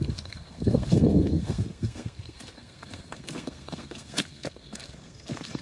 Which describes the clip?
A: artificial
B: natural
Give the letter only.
A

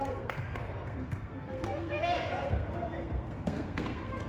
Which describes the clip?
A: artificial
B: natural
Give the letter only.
A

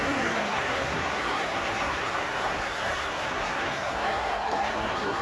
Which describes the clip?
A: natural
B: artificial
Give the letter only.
B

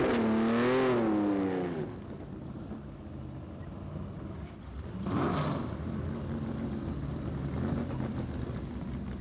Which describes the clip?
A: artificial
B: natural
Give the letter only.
B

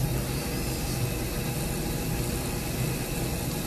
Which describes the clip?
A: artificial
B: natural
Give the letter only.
B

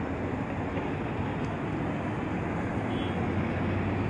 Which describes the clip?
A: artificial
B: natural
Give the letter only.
B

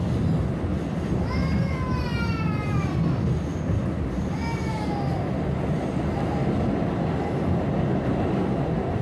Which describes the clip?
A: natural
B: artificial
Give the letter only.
A